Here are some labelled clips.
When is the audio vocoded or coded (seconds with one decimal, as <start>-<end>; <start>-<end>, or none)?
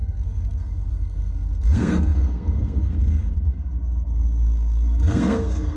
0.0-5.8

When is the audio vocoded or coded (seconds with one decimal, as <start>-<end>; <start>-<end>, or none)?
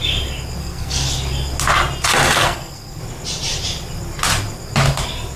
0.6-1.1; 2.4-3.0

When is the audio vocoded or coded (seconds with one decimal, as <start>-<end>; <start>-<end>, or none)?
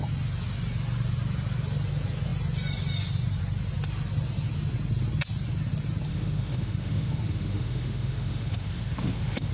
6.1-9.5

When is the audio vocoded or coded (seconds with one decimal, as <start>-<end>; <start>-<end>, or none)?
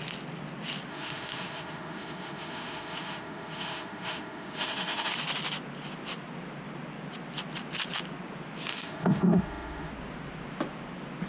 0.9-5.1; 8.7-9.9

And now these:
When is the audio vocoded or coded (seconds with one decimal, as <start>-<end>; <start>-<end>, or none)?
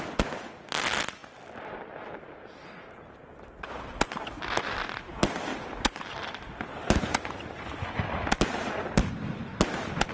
5.5-10.1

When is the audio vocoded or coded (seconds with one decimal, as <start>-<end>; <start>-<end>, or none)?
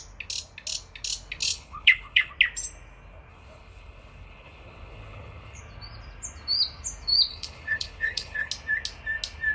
1.4-2.3; 3.3-5.6; 7.3-8.5